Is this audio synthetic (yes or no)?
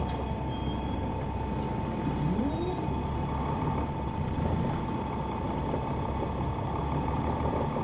no